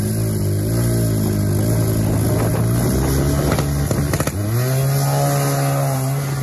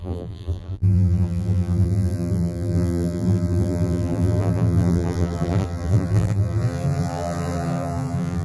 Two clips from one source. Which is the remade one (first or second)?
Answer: second